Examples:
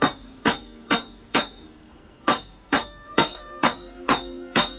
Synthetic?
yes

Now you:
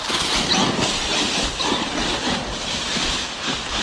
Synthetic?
no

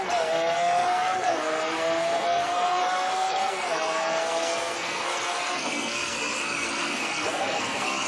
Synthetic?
yes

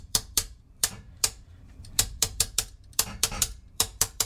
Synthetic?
yes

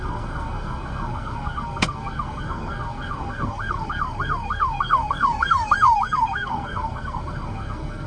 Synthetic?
yes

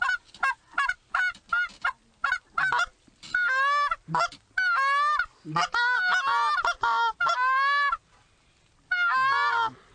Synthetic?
no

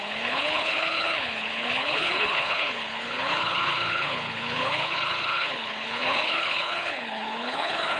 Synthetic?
yes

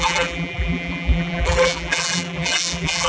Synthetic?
yes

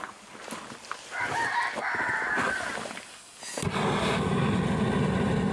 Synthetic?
no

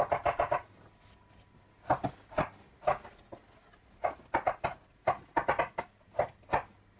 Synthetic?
no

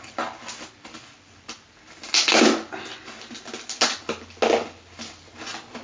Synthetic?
no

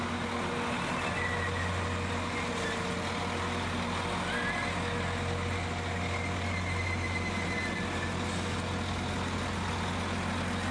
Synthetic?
no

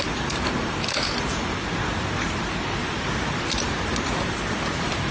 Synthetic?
yes